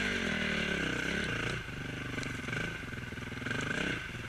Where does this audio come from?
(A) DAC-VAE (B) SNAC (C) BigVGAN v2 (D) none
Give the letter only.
D